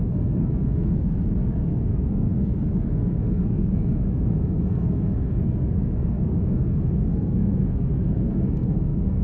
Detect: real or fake fake